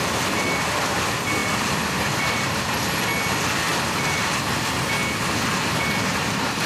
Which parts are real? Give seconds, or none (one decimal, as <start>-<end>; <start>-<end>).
0.0-1.4; 2.6-6.7